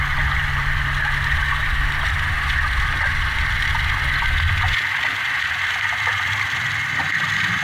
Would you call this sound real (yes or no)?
yes